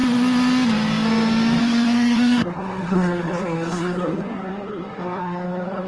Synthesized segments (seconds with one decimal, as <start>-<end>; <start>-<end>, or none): 1.6-5.9